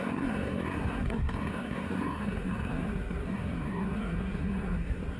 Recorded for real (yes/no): no